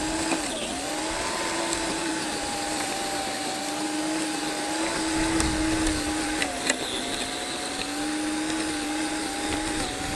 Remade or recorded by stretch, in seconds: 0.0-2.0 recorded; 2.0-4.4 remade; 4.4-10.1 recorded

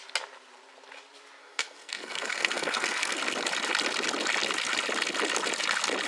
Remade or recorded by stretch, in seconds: 0.0-1.4 recorded; 1.4-3.2 remade; 3.2-6.1 recorded

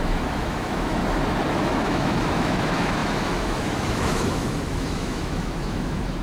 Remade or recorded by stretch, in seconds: 0.0-1.0 remade; 1.0-1.5 recorded; 1.5-6.2 remade